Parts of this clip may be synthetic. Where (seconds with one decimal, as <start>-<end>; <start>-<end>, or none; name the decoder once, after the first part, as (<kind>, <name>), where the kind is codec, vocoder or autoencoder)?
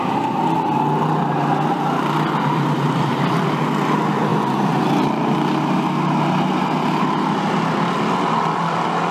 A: none